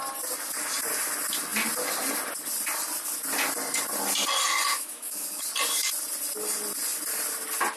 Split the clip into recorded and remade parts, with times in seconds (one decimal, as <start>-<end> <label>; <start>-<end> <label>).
0.0-4.7 recorded; 4.7-5.4 remade; 5.4-7.8 recorded